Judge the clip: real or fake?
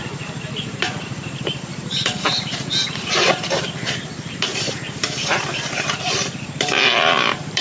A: fake